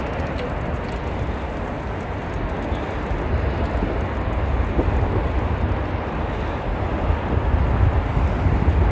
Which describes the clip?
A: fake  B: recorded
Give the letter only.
B